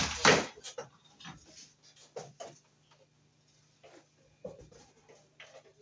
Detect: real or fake real